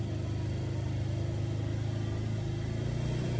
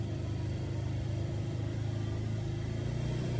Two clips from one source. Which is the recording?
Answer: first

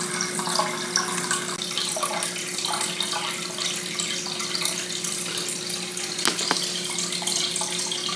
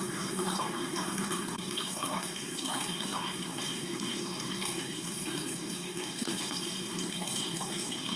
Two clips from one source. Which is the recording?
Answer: first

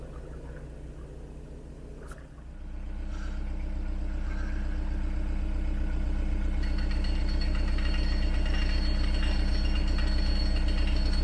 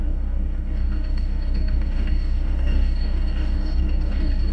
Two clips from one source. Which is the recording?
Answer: first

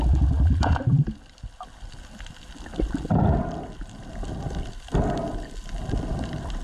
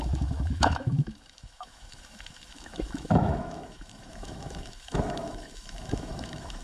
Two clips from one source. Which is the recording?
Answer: first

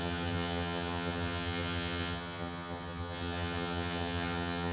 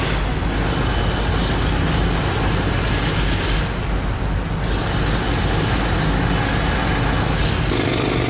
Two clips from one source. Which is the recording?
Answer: second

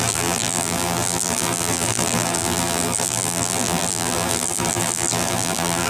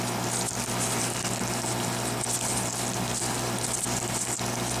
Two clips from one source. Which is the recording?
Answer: second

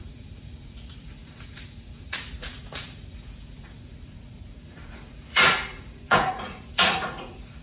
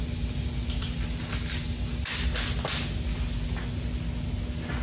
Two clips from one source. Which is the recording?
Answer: second